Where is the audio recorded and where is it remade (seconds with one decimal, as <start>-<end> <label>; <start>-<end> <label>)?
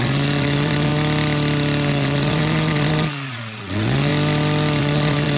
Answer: 0.0-0.9 remade; 0.9-1.9 recorded; 1.9-4.1 remade; 4.1-4.8 recorded; 4.8-5.4 remade